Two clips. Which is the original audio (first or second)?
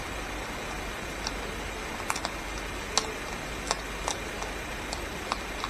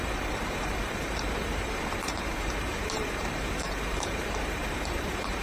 first